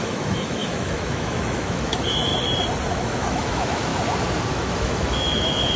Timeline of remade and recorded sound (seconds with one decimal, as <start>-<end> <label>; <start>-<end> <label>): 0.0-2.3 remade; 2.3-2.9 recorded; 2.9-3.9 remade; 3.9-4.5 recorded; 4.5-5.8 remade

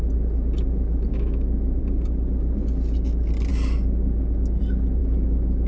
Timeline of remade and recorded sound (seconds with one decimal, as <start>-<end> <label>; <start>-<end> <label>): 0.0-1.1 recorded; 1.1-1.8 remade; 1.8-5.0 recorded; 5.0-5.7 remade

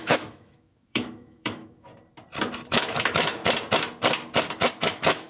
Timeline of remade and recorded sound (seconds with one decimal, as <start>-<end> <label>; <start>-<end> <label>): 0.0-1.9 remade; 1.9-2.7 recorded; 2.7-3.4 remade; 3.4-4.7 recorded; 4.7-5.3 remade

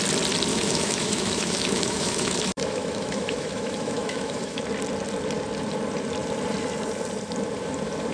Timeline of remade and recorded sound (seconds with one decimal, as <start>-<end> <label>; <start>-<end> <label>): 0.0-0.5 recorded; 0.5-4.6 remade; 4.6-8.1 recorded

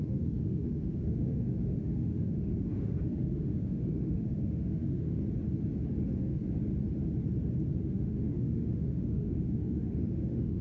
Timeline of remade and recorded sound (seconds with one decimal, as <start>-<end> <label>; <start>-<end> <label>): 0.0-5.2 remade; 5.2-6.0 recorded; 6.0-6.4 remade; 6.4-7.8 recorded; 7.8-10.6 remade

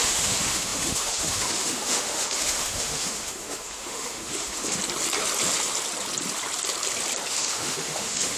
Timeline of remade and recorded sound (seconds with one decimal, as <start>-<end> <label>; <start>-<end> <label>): 0.0-4.8 remade; 4.8-7.3 recorded; 7.3-8.4 remade

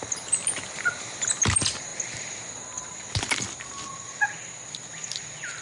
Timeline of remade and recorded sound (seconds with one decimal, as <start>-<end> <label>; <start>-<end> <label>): 0.0-5.6 recorded